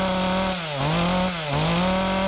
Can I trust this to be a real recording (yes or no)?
yes